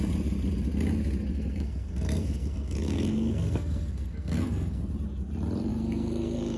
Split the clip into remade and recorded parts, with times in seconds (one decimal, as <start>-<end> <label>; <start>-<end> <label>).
0.0-1.3 recorded; 1.3-4.8 remade; 4.8-5.7 recorded; 5.7-6.6 remade